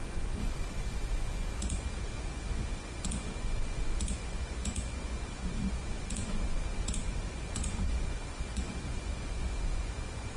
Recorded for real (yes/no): no